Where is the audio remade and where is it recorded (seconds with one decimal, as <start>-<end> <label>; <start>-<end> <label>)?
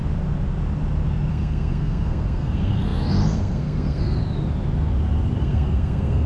0.0-1.3 recorded; 1.3-4.2 remade; 4.2-5.4 recorded; 5.4-6.3 remade